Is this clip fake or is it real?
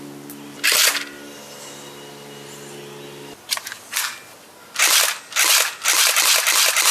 real